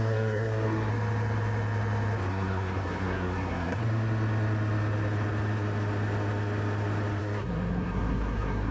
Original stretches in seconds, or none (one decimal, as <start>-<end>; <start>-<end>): 0.9-2.3; 3.8-7.2